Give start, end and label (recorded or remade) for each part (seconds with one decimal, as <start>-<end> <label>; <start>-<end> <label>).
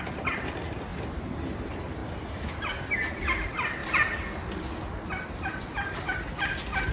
0.0-6.9 recorded